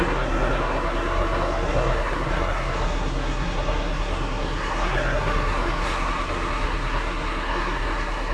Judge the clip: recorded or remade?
remade